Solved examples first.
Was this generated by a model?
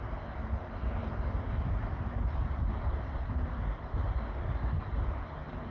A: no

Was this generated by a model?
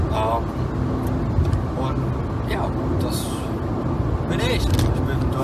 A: no